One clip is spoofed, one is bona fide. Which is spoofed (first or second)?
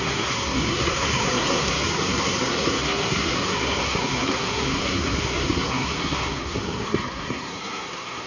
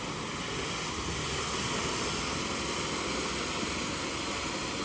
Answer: first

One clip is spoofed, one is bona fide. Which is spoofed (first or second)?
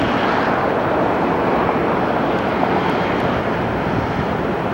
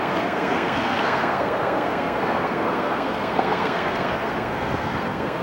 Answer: second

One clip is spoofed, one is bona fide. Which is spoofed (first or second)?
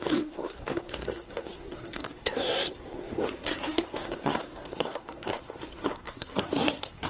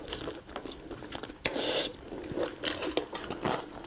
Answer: first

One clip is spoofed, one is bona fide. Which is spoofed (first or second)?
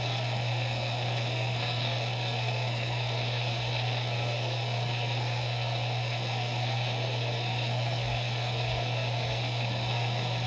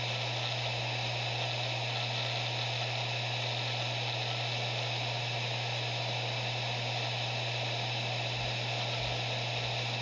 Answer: first